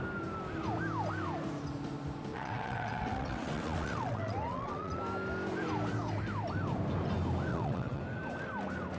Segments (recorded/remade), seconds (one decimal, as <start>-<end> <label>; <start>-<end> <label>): 0.0-2.3 recorded; 2.3-5.0 remade; 5.0-7.5 recorded; 7.5-8.0 remade; 8.0-9.0 recorded